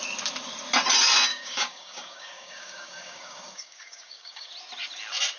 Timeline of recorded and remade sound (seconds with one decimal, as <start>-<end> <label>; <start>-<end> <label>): 0.0-1.3 recorded; 1.3-4.5 remade; 4.5-5.4 recorded

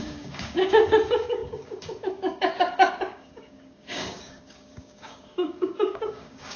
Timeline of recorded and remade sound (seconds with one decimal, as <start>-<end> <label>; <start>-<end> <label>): 0.0-6.6 remade

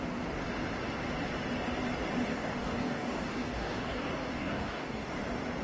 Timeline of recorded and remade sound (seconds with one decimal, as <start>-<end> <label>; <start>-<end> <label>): 0.0-2.3 recorded; 2.3-5.1 remade; 5.1-5.6 recorded

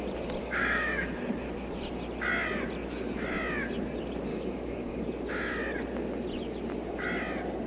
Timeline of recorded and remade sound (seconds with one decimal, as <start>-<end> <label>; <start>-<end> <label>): 0.0-0.4 recorded; 0.4-1.2 remade; 1.2-4.3 recorded; 4.3-5.0 remade; 5.0-7.7 recorded

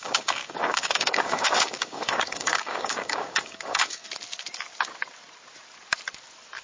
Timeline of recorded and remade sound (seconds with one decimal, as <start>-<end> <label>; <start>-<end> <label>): 0.0-4.0 remade; 4.0-6.6 recorded

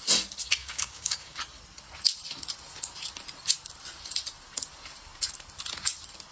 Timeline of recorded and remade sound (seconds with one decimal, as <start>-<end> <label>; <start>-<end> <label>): 0.0-0.6 recorded; 0.6-1.4 remade; 1.4-6.3 recorded

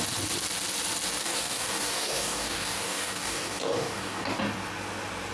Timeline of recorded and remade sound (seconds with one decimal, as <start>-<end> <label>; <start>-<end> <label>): 0.0-1.2 recorded; 1.2-4.4 remade; 4.4-5.3 recorded